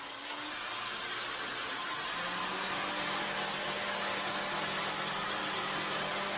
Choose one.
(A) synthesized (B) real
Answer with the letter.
B